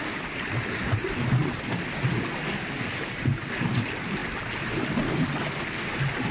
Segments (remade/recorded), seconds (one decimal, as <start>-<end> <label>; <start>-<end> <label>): 0.0-6.3 recorded